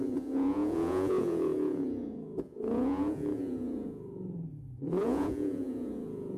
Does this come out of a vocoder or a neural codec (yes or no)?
yes